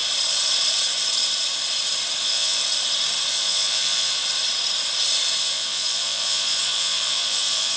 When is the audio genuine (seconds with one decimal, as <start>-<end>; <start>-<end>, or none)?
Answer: 0.0-2.2; 2.6-3.3; 4.2-5.4